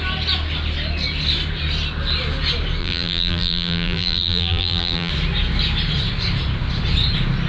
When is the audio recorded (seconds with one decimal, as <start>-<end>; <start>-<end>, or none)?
0.0-2.8; 5.1-7.5

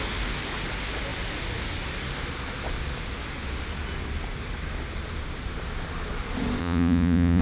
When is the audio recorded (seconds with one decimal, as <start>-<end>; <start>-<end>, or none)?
0.0-6.6

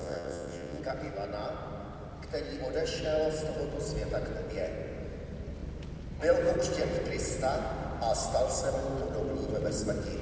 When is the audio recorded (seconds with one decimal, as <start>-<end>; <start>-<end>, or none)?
0.8-10.2

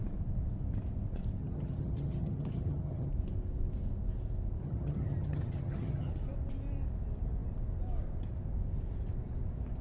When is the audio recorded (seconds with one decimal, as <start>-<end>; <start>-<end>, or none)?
0.0-1.4; 3.1-4.6; 6.1-9.8